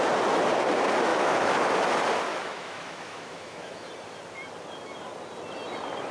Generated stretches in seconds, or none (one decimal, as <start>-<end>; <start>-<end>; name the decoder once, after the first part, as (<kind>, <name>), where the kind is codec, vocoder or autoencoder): 1.1-1.7 (autoencoder, DAC-VAE); 2.3-3.9